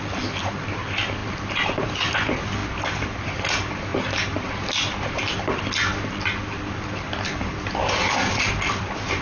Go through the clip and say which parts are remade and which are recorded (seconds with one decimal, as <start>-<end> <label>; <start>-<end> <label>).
0.0-9.2 recorded